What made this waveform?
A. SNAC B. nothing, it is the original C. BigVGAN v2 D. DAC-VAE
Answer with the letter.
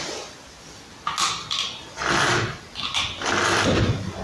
B